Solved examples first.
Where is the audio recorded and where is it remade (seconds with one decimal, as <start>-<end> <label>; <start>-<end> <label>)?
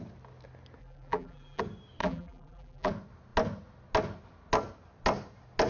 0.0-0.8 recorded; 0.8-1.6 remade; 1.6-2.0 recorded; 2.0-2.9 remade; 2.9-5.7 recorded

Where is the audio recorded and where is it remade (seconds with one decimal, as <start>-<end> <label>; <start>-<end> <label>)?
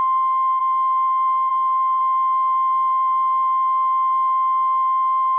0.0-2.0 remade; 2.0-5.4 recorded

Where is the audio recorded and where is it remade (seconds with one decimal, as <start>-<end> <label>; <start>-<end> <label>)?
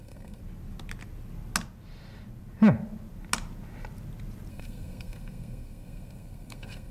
0.0-0.4 remade; 0.4-4.5 recorded; 4.5-6.9 remade